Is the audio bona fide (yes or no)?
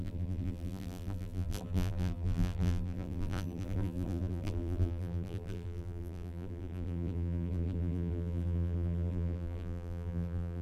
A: no